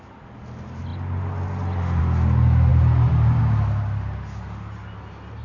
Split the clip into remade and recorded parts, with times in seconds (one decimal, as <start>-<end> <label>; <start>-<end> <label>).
0.0-2.7 recorded; 2.7-3.4 remade; 3.4-5.4 recorded